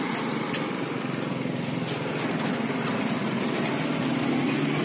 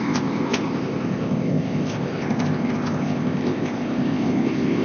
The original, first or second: first